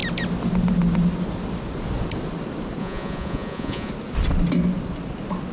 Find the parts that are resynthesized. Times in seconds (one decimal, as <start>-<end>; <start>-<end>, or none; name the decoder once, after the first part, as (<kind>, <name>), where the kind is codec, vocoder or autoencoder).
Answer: 2.8-3.9 (vocoder, Vocos)